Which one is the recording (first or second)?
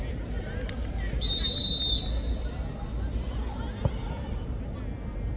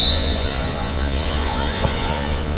first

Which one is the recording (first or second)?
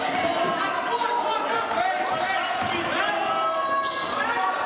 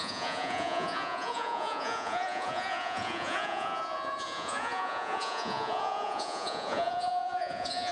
first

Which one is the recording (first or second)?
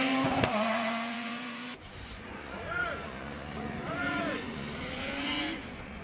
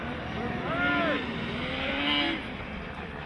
second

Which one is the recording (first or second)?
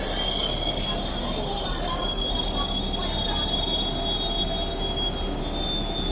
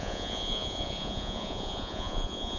first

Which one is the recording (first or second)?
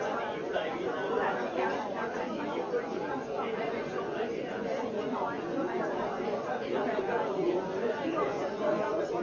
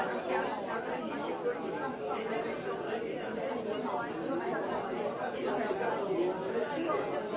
second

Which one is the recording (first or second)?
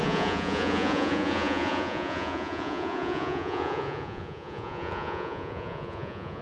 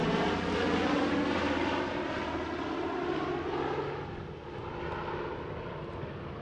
second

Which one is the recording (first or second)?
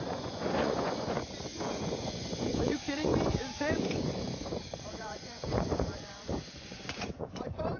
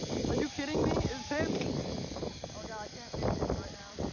second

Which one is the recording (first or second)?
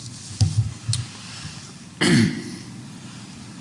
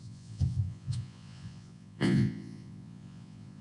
first